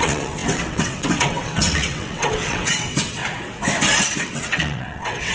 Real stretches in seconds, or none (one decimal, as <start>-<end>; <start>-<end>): 3.2-4.2